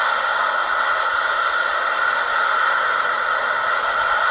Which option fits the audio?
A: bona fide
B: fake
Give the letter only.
A